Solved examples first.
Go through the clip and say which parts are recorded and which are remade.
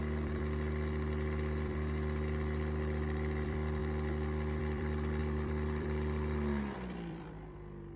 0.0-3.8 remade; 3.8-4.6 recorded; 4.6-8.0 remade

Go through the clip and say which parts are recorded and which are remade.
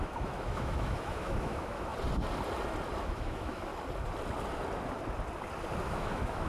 0.0-1.9 remade; 1.9-3.0 recorded; 3.0-3.7 remade; 3.7-5.8 recorded; 5.8-6.5 remade